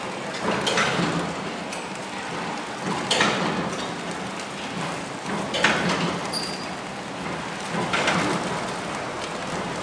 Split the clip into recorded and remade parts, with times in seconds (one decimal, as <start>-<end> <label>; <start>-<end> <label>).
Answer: 0.0-9.8 recorded